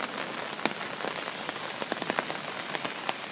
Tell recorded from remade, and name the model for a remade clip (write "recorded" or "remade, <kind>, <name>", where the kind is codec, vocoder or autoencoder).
recorded